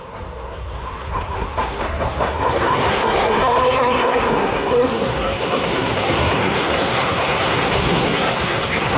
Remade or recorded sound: remade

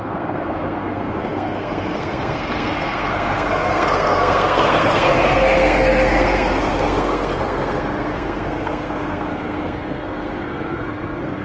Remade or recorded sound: remade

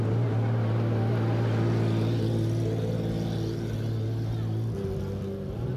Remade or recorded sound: recorded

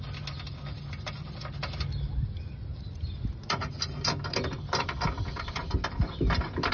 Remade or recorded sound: recorded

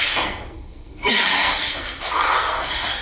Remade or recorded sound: remade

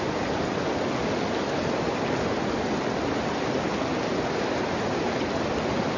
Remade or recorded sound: recorded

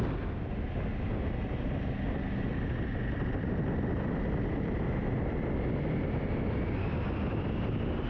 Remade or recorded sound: recorded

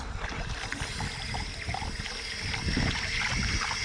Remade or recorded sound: recorded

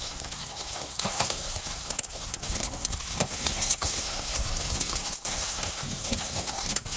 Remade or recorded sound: remade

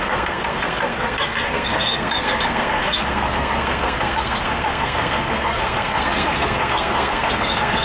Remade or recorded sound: remade